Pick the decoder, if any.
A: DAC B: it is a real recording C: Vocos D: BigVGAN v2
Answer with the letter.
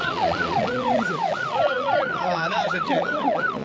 C